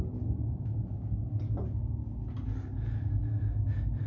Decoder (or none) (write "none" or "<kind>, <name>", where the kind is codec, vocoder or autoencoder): none